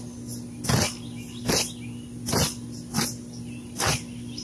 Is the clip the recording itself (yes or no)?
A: yes